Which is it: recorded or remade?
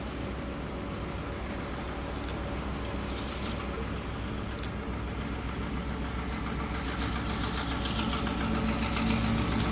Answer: recorded